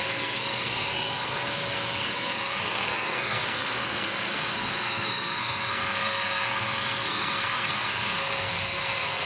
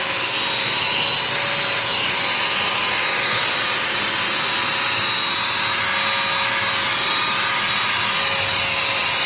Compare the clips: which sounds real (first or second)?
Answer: second